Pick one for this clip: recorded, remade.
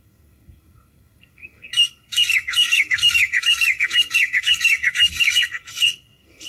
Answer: remade